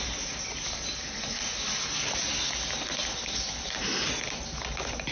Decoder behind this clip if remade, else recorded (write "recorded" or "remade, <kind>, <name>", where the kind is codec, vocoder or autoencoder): recorded